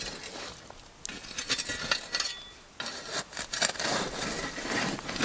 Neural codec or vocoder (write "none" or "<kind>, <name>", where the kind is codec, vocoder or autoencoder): none